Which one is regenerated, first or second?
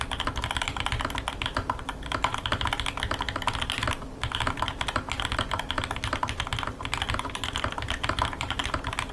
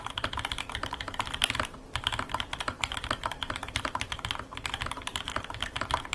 second